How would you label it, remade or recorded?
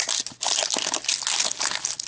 recorded